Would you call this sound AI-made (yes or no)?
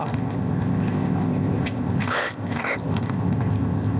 yes